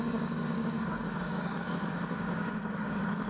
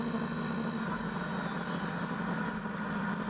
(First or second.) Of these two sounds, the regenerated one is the first